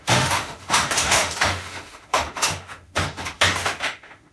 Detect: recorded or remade remade